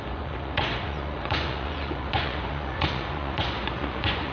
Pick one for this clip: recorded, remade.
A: remade